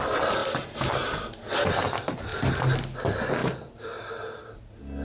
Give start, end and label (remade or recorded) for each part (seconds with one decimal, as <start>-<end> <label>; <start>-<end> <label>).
0.0-5.0 recorded